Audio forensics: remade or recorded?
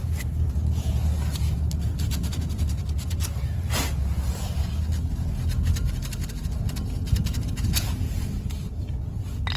recorded